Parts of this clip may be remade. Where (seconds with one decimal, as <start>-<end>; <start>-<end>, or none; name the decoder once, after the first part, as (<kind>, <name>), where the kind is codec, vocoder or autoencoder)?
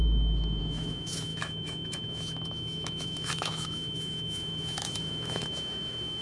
0.0-6.2 (autoencoder, DAC-VAE)